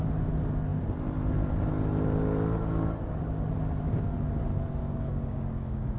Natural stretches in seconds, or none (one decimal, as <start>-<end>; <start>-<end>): 0.0-4.8